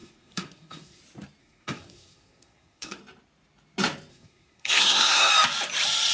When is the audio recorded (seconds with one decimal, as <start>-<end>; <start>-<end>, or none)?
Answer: 1.0-1.4; 3.0-4.1; 5.3-6.1